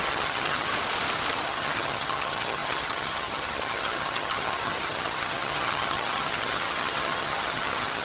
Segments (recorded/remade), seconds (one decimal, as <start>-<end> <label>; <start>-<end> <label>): 0.0-0.7 remade; 0.7-1.3 recorded; 1.3-8.0 remade

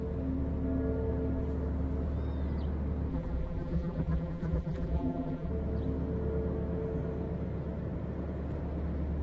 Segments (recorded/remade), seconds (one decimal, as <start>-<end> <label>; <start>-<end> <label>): 0.0-3.1 recorded; 3.1-5.5 remade; 5.5-9.2 recorded

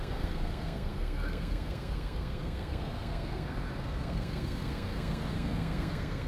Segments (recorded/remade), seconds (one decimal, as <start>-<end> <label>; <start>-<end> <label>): 0.0-6.3 remade

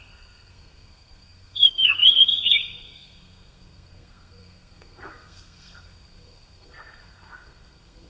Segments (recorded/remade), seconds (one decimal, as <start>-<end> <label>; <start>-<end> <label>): 0.0-8.1 remade

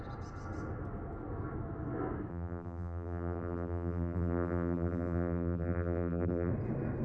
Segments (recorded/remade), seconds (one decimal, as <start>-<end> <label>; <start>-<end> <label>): 0.0-2.3 recorded; 2.3-6.5 remade; 6.5-7.0 recorded

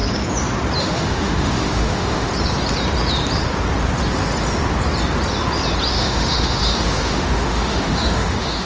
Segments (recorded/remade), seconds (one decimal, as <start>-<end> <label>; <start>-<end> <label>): 0.0-0.8 recorded; 0.8-2.3 remade; 2.3-5.9 recorded; 5.9-8.7 remade